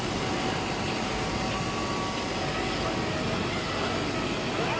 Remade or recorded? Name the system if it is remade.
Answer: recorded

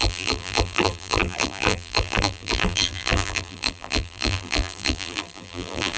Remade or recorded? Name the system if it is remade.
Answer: remade, vocoder, BigVGAN v2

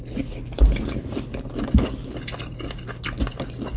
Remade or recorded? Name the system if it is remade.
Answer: recorded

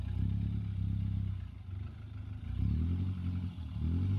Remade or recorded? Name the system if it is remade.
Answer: recorded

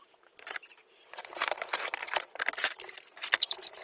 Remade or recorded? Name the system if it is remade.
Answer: remade, vocoder, BigVGAN v2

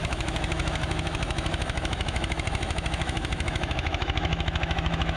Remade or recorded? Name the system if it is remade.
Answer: remade, autoencoder, DAC-VAE